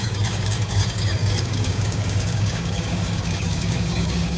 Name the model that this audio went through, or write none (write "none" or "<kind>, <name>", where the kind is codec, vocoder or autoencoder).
codec, DAC